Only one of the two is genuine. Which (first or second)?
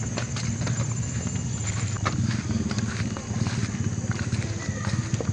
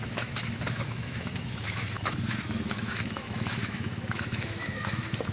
first